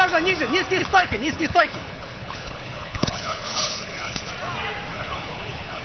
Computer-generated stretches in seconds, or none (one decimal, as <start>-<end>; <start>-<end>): 0.8-4.3; 4.9-5.8